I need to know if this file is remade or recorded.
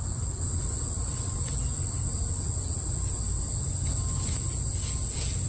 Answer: recorded